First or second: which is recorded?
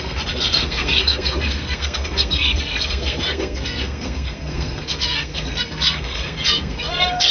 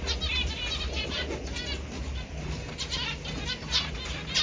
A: second